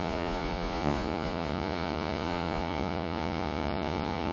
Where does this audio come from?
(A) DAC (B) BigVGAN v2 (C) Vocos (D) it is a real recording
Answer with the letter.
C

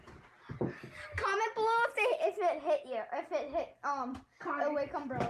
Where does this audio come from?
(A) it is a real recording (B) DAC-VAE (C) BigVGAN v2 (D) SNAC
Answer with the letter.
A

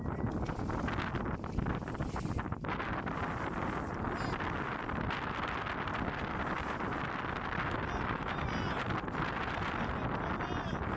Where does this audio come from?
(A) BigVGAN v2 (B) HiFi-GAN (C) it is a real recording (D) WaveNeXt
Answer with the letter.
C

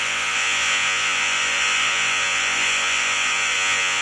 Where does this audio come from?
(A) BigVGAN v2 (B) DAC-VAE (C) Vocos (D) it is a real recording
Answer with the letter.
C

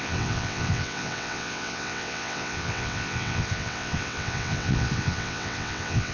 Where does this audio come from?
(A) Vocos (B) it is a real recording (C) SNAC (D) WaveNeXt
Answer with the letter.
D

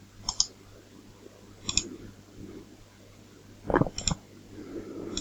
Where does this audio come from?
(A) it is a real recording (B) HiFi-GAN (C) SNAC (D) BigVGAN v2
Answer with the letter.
A